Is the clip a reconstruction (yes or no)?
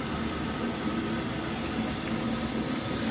no